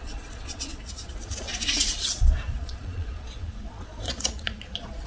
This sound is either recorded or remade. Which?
remade